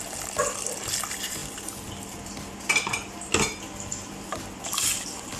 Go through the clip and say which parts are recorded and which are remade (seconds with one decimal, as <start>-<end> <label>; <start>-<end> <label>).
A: 0.0-5.4 recorded